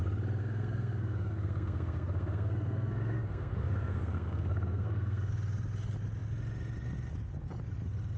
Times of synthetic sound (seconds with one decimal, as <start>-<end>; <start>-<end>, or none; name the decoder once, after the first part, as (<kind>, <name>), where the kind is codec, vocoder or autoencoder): 0.4-5.3 (codec, SNAC)